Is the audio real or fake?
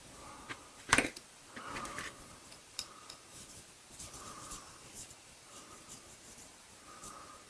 fake